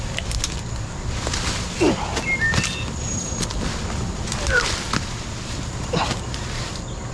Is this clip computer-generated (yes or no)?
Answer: no